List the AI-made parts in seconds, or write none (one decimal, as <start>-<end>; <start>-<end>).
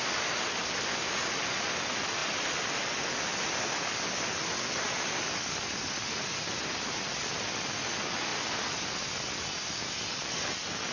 none